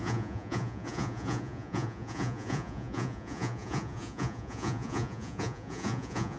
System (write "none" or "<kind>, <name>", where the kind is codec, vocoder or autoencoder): vocoder, Vocos